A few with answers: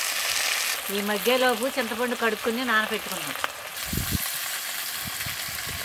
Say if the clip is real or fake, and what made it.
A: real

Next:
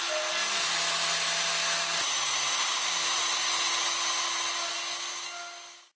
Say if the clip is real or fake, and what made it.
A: real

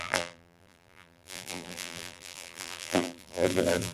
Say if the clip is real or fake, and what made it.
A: fake, vocoder, BigVGAN v2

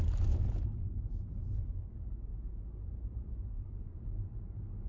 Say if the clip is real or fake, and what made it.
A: fake, vocoder, BigVGAN v2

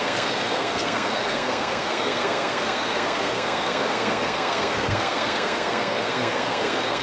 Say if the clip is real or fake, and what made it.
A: fake, codec, SNAC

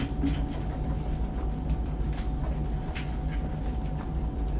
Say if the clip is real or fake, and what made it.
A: real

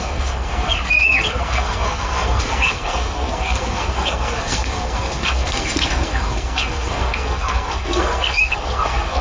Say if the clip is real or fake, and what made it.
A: fake, codec, SNAC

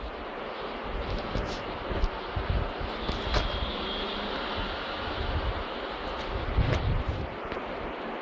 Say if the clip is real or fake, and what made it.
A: real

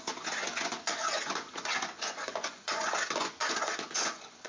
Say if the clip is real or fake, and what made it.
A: fake, vocoder, Vocos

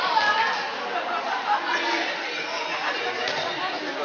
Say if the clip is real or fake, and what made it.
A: real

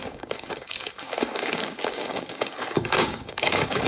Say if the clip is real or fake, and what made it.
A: fake, codec, DAC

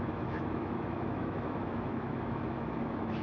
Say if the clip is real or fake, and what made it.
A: fake, autoencoder, DAC-VAE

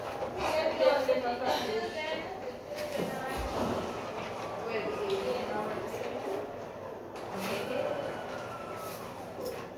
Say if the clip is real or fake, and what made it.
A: real